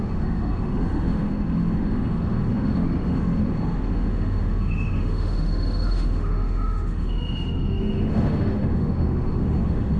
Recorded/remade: remade